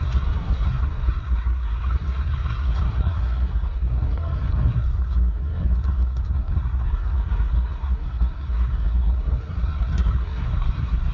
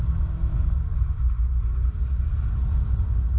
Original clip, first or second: second